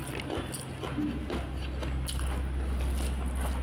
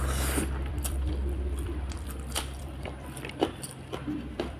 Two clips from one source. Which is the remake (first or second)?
second